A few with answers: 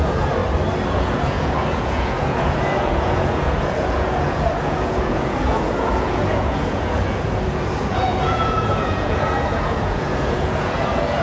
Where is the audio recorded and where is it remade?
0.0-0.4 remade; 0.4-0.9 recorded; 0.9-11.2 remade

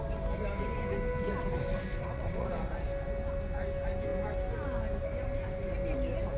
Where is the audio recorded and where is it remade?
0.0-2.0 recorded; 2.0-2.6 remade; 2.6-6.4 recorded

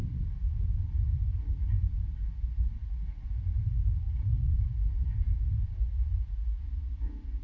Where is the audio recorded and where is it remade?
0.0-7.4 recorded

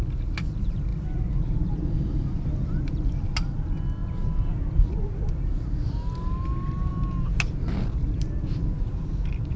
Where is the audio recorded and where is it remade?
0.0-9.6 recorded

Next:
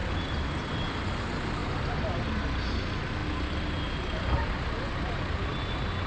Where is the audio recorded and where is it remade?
0.0-1.1 remade; 1.1-6.1 recorded